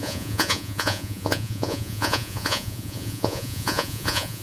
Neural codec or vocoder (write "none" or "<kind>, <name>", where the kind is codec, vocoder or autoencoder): vocoder, Vocos